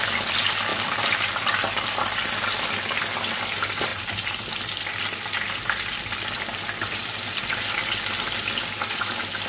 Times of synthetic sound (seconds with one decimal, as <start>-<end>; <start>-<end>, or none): none